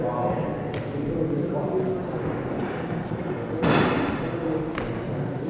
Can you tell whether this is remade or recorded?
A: recorded